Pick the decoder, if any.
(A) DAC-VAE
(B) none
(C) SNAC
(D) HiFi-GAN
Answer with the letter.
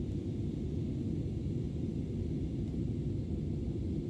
B